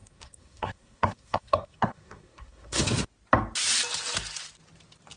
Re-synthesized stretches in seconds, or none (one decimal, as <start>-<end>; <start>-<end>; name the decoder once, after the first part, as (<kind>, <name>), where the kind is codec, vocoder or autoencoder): 0.0-2.8 (codec, SNAC)